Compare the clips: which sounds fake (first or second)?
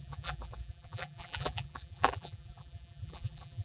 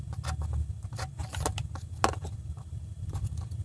first